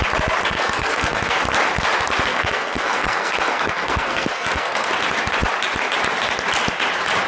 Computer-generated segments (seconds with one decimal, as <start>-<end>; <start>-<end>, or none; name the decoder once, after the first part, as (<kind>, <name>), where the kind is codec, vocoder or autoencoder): 0.4-1.4 (codec, SNAC); 2.3-4.9